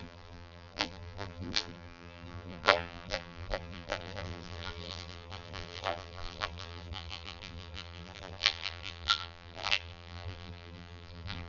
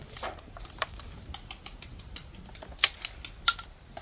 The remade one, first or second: first